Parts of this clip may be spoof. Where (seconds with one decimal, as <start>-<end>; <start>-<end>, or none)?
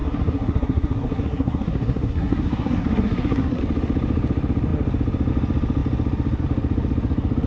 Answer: 0.0-3.6